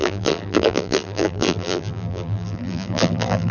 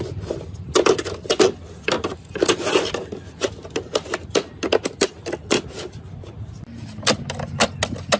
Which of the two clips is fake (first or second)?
first